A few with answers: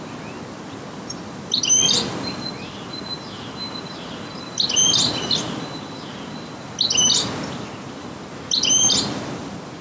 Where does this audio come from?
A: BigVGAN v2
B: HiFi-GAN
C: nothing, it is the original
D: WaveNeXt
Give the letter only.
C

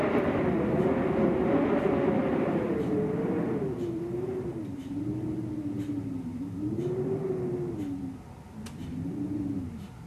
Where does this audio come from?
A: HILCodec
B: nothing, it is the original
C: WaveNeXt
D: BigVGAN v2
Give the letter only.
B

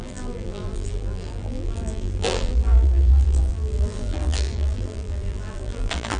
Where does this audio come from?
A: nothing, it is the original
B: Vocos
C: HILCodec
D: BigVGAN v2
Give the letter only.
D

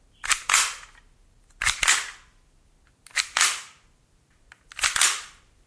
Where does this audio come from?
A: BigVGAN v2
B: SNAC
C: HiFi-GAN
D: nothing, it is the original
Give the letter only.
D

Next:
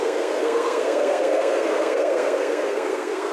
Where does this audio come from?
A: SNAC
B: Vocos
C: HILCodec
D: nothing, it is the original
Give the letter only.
A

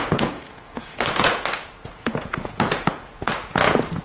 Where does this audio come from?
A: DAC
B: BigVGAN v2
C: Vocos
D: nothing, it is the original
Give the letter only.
C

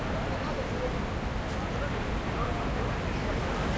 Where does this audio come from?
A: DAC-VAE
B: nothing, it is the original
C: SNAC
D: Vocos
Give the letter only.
B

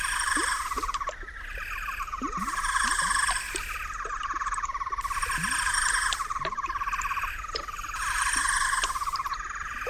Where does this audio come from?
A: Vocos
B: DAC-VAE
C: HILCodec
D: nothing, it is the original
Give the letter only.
D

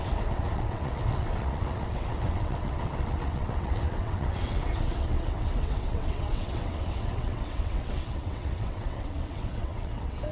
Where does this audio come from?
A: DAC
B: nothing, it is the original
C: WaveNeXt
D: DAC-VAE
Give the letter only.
C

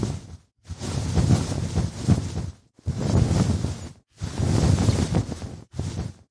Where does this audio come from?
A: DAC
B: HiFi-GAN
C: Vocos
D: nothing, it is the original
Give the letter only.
D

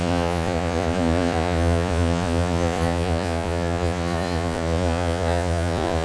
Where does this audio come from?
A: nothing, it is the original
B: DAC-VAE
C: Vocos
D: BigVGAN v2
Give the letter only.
C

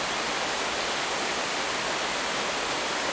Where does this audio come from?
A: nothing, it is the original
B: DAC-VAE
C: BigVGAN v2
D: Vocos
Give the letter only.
C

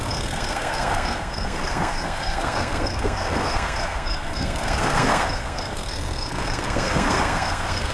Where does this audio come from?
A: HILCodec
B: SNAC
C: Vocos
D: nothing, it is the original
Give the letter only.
B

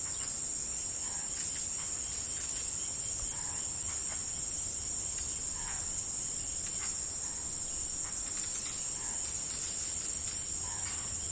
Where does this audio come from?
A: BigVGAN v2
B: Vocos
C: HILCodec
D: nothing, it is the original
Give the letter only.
D